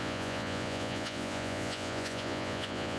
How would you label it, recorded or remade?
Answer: remade